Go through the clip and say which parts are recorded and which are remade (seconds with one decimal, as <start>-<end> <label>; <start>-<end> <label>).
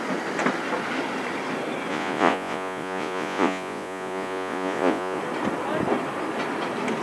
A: 0.0-1.9 recorded; 1.9-5.2 remade; 5.2-7.0 recorded